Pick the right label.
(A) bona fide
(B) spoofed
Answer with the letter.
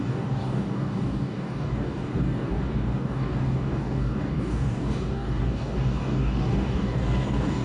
B